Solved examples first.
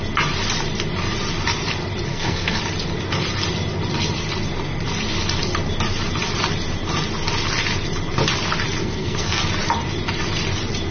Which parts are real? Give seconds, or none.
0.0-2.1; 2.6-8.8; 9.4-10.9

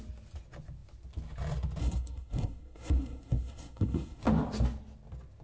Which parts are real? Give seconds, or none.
0.0-1.8; 4.2-5.4

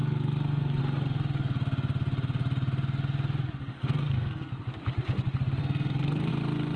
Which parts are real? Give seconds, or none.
0.8-3.6; 4.5-5.6; 6.3-6.8

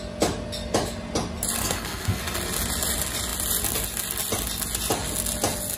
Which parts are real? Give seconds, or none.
0.0-1.6; 2.2-5.8

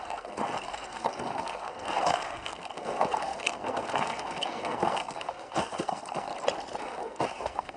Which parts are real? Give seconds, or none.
6.3-6.8

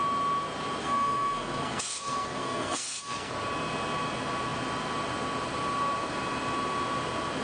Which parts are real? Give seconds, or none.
0.0-0.8; 3.3-7.4